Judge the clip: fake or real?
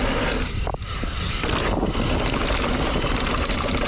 fake